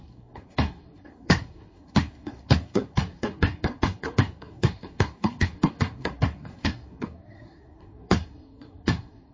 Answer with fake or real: fake